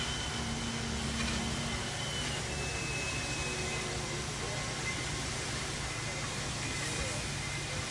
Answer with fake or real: real